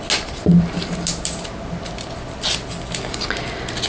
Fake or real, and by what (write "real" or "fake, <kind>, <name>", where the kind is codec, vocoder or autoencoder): real